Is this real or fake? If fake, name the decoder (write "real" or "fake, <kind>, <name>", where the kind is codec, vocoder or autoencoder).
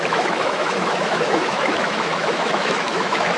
fake, autoencoder, DAC-VAE